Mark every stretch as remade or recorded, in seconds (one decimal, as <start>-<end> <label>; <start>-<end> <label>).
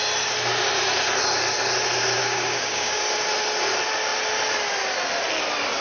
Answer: 0.0-2.2 recorded; 2.2-3.0 remade; 3.0-5.8 recorded